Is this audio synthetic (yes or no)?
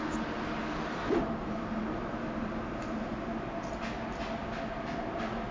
no